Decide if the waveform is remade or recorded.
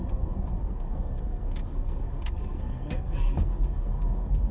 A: remade